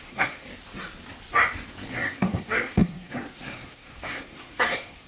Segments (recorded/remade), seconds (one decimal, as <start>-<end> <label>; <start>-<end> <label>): 0.0-0.5 remade; 0.5-1.9 recorded; 1.9-5.1 remade

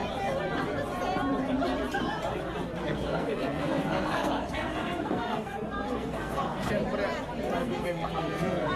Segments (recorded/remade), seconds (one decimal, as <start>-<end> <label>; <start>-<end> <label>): 0.0-2.8 recorded; 2.8-6.7 remade; 6.7-7.6 recorded; 7.6-8.8 remade

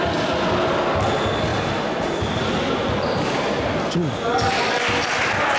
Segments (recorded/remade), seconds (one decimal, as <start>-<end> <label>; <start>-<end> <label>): 0.0-5.6 recorded

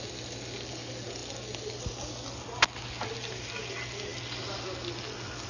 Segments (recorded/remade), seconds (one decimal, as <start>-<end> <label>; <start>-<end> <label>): 0.0-5.5 recorded

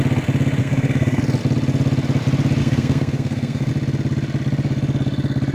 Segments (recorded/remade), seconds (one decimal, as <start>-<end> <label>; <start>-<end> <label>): 0.0-0.6 recorded; 0.6-1.2 remade; 1.2-2.6 recorded; 2.6-3.7 remade; 3.7-5.5 recorded